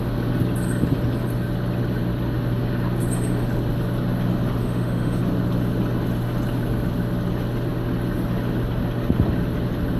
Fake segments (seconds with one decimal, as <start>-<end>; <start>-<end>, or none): 4.6-5.2

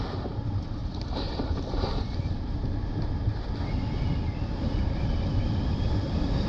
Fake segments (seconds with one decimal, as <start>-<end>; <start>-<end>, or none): none

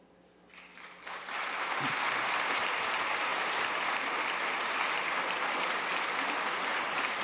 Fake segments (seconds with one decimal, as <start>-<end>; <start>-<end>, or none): none

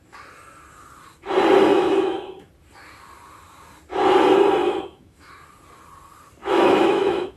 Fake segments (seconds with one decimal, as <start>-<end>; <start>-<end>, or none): 1.7-2.5; 4.6-5.3; 6.4-7.4

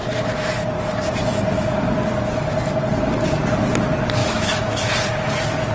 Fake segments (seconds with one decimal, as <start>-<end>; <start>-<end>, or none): 4.2-4.9

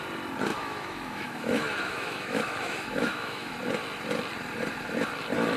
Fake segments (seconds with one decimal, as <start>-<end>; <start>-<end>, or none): 0.5-3.5

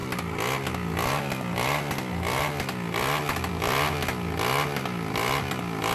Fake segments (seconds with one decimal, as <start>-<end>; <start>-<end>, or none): none

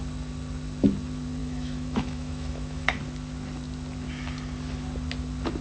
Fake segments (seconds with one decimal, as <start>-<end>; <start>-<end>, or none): 1.4-3.0